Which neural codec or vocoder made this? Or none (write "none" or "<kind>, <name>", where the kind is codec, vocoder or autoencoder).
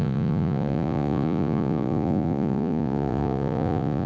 vocoder, Vocos